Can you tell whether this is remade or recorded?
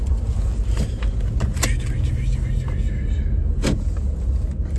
recorded